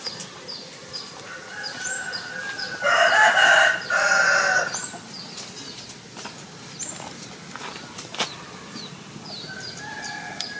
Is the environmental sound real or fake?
real